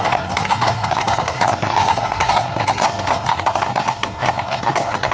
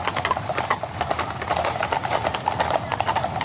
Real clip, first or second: second